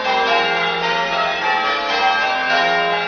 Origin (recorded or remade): recorded